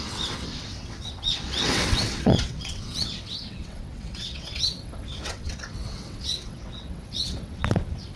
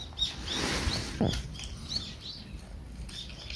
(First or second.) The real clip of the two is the second